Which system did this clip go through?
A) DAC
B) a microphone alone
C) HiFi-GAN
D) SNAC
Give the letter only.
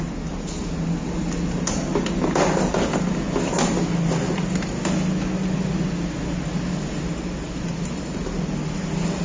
B